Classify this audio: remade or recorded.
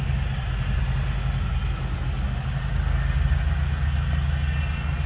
recorded